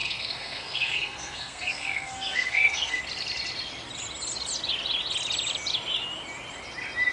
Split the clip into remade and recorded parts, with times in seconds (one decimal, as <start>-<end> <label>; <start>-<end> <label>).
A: 0.0-3.0 remade; 3.0-7.1 recorded